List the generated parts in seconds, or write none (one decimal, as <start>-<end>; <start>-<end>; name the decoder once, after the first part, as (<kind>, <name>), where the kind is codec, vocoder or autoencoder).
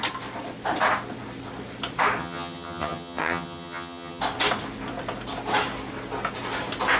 2.2-4.2 (vocoder, HiFi-GAN)